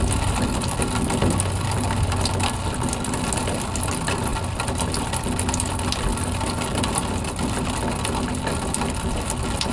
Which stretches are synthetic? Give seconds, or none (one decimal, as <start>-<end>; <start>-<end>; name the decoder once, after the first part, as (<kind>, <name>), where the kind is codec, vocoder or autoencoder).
none